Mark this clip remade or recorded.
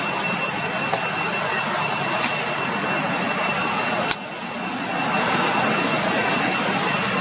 recorded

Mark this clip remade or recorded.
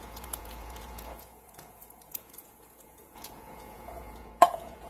remade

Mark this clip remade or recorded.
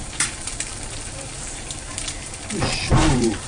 remade